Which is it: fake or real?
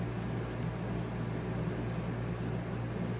real